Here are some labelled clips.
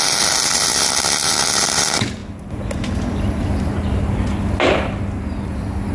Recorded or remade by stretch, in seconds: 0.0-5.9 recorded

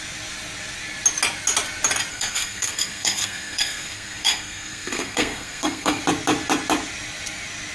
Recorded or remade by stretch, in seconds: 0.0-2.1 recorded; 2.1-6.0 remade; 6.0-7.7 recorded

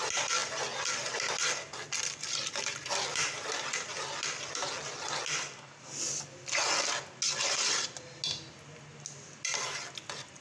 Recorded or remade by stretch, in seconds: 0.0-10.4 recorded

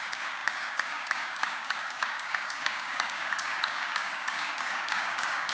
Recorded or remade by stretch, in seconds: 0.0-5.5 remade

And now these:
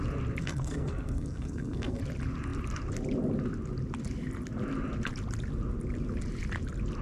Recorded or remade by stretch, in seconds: 0.0-0.4 recorded; 0.4-2.0 remade; 2.0-7.0 recorded

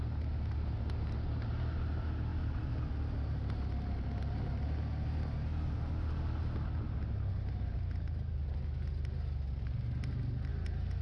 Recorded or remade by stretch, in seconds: 0.0-11.0 recorded

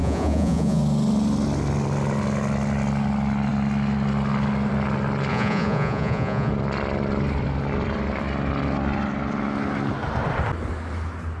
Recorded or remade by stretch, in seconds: 0.0-0.8 remade; 0.8-5.3 recorded; 5.3-6.5 remade; 6.5-11.4 recorded